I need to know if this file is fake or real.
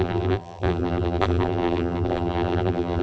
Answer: fake